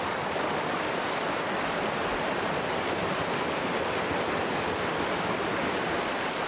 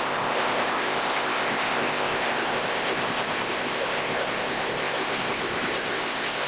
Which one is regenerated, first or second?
second